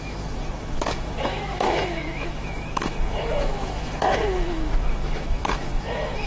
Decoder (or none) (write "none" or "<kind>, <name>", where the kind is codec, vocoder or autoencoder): autoencoder, DAC-VAE